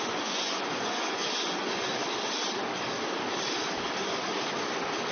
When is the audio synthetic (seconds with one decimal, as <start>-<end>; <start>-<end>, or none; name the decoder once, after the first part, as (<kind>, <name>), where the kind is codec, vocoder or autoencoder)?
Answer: 0.0-1.9 (vocoder, Vocos)

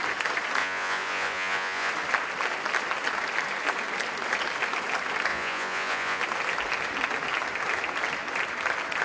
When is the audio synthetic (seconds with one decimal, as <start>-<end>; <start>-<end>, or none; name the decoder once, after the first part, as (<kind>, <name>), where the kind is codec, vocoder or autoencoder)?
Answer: 0.6-1.9 (vocoder, Vocos); 5.3-6.2

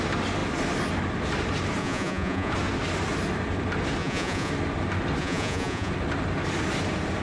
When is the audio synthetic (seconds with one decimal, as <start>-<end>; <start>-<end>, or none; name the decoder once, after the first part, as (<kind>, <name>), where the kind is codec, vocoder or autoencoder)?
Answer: 1.8-2.5 (vocoder, Vocos); 4.0-4.5; 5.2-5.9

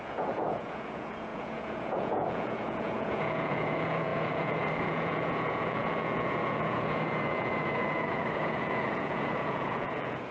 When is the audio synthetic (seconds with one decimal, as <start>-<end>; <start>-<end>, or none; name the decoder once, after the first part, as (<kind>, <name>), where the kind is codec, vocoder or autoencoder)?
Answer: 0.0-10.3 (vocoder, Vocos)

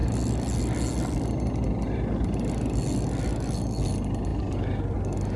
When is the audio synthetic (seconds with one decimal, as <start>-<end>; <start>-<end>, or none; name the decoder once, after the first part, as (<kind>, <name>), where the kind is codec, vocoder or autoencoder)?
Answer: none